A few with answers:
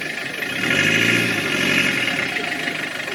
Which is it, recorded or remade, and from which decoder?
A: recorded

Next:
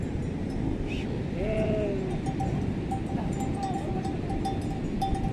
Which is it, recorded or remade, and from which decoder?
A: recorded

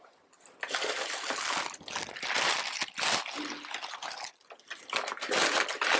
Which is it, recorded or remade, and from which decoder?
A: recorded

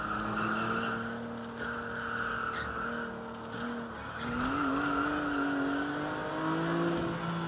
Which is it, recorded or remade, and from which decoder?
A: recorded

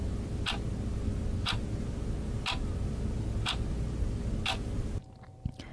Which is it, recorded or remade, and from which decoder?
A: recorded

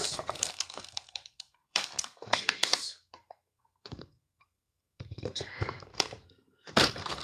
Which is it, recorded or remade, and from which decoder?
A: remade, codec, SNAC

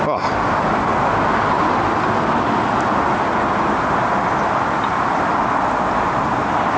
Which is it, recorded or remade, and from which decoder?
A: recorded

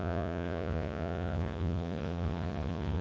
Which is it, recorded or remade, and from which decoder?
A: remade, vocoder, Vocos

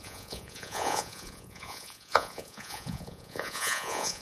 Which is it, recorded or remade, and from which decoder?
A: remade, vocoder, Vocos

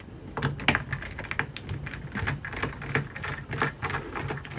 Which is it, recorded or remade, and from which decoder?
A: recorded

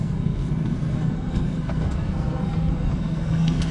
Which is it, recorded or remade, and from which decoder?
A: remade, codec, SNAC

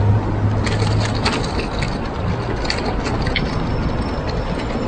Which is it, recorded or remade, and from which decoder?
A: recorded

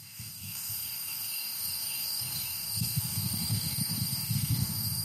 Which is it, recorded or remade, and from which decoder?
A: remade, codec, DAC